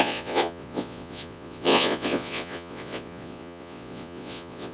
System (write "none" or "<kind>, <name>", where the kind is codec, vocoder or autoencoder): vocoder, Vocos